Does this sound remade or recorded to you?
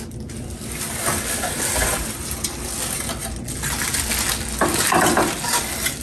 recorded